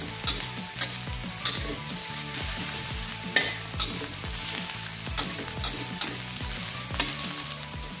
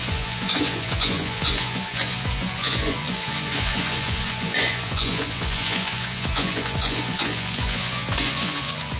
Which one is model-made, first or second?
second